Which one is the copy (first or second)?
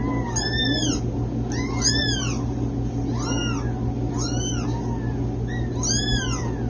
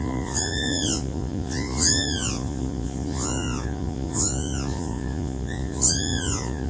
second